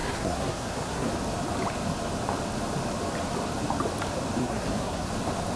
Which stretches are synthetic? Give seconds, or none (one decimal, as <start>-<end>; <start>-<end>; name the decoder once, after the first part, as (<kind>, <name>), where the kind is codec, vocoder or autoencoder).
0.0-1.1 (codec, SNAC); 4.4-5.1